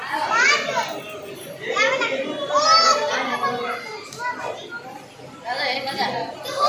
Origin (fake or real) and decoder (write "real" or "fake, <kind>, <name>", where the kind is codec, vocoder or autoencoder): real